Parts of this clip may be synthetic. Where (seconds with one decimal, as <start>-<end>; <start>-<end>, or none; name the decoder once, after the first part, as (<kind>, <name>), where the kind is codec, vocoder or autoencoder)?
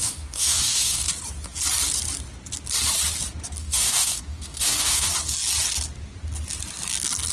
0.0-1.1 (codec, DAC); 3.6-5.1